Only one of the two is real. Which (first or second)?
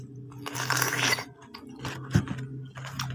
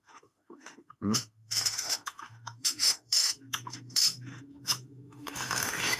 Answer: first